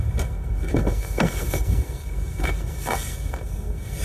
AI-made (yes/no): yes